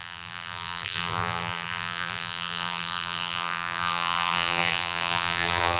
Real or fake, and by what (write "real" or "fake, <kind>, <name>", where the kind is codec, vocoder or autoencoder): fake, vocoder, BigVGAN v2